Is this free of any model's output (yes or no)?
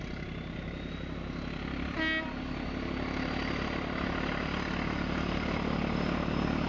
yes